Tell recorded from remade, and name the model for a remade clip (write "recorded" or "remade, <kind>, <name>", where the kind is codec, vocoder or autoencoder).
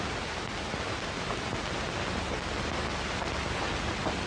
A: recorded